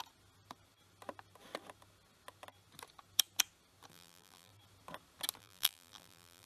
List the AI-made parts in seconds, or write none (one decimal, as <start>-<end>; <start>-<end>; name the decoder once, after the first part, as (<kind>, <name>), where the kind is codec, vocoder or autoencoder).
3.9-4.5 (vocoder, BigVGAN v2); 5.4-6.5